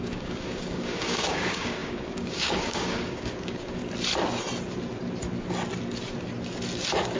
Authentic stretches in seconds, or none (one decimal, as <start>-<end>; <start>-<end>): 3.8-7.2